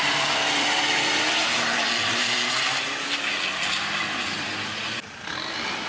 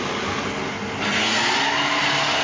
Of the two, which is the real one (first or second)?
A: second